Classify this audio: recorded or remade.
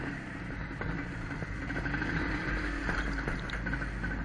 recorded